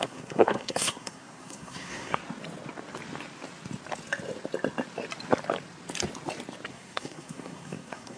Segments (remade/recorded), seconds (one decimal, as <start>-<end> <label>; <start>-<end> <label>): 0.0-2.2 remade; 2.2-6.7 recorded; 6.7-8.2 remade